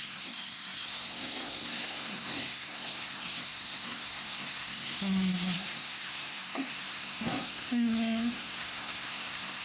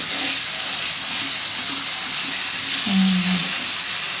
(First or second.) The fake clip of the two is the first